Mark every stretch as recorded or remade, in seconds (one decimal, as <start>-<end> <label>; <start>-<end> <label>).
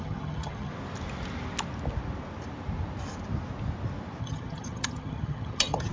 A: 0.0-0.7 remade; 0.7-4.2 recorded; 4.2-5.9 remade